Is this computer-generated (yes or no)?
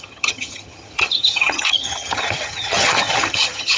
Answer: yes